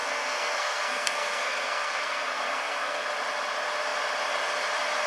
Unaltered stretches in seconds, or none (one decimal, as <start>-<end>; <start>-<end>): 3.1-5.1

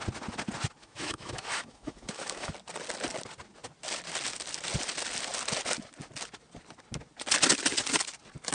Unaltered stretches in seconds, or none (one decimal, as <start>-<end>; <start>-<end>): 0.0-0.8; 2.5-8.5

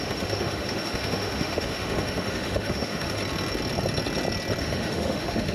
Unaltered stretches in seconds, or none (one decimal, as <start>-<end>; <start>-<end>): 3.2-4.6

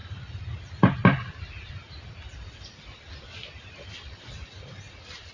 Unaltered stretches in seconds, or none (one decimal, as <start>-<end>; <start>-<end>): 0.0-5.3

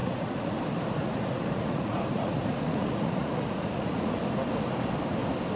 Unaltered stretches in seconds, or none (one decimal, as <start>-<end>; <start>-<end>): 0.6-1.0; 4.2-5.5